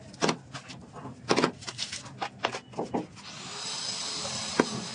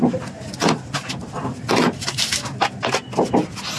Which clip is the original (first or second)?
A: first